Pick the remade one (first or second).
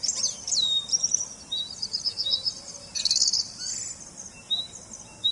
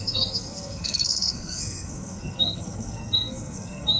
second